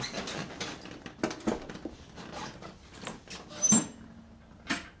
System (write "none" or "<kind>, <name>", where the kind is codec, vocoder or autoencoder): none